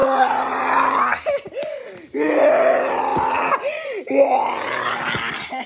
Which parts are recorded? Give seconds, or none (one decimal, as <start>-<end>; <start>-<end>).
0.5-5.7